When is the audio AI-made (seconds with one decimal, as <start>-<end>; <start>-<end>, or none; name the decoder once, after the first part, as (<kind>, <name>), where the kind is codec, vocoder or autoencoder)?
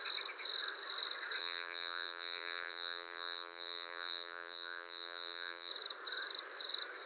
1.4-5.7 (vocoder, BigVGAN v2)